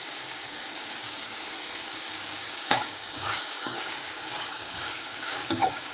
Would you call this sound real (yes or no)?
no